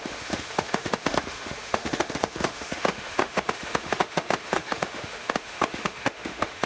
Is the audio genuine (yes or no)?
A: no